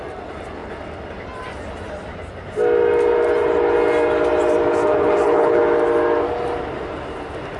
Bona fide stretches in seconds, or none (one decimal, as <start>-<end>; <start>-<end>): 0.0-4.9; 5.6-7.6